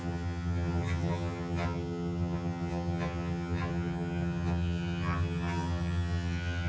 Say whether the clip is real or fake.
fake